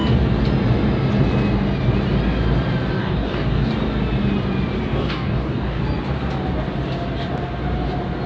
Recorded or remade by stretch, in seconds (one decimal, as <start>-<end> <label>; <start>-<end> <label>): 0.0-3.0 recorded; 3.0-3.7 remade; 3.7-4.9 recorded; 4.9-5.8 remade; 5.8-8.3 recorded